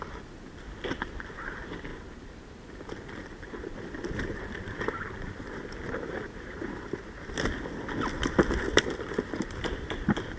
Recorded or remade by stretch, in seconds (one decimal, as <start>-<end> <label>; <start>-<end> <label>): 0.0-10.4 recorded